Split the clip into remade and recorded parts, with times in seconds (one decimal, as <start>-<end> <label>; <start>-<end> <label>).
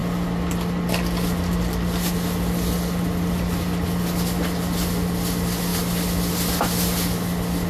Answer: 0.0-7.7 recorded